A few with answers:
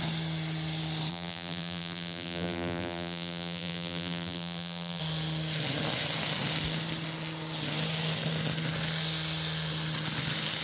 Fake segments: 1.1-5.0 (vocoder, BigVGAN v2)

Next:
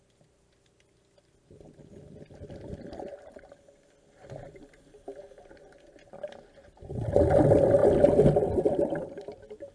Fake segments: none

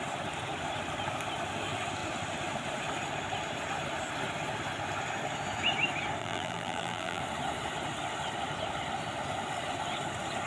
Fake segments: 6.2-7.2 (vocoder, BigVGAN v2)

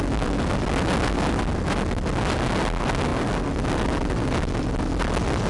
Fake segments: none

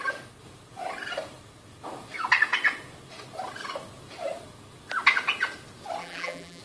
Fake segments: 6.0-6.6 (vocoder, BigVGAN v2)

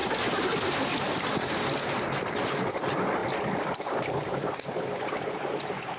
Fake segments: 3.2-5.4 (vocoder, BigVGAN v2)

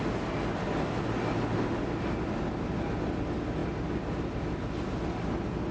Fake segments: none

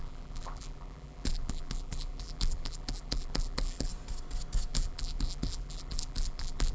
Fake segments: 0.0-3.9 (vocoder, BigVGAN v2); 4.7-6.7